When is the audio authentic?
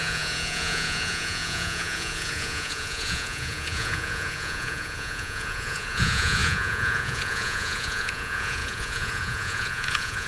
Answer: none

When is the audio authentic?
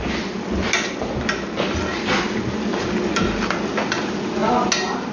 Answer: 0.0-5.1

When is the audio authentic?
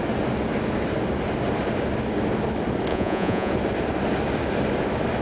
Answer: 0.0-2.9; 3.5-5.2